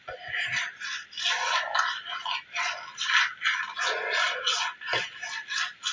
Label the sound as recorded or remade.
recorded